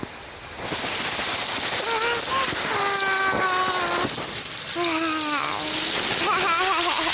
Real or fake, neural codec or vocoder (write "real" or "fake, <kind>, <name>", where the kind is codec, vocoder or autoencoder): real